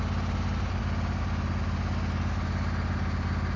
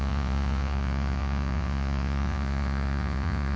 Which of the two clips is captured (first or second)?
first